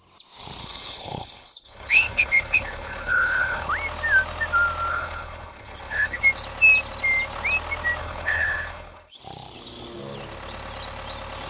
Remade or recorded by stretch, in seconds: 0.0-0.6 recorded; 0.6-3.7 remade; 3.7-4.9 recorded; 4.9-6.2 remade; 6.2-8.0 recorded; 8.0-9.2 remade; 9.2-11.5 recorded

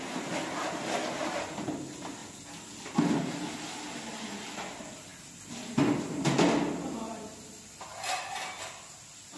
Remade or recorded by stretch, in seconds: 0.0-9.4 recorded

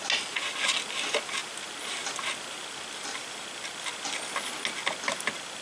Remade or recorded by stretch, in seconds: 0.0-5.6 recorded